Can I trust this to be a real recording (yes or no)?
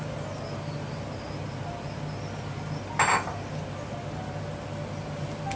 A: yes